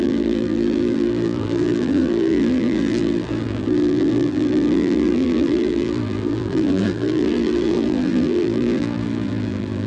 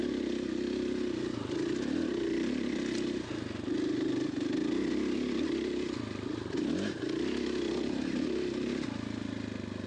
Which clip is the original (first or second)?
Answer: second